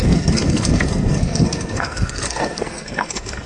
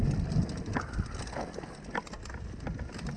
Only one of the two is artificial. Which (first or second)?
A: first